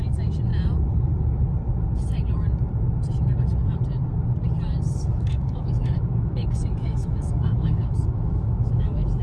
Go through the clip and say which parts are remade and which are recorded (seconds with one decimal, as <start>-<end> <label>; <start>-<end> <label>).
0.0-5.1 recorded; 5.1-9.2 remade